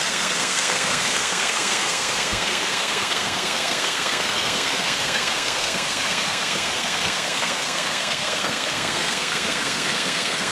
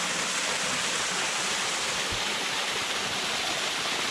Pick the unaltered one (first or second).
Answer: second